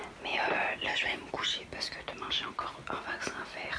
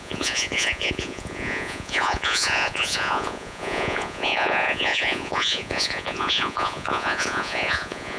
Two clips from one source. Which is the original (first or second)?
first